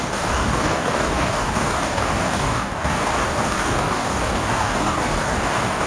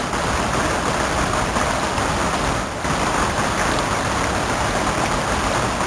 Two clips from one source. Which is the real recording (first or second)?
second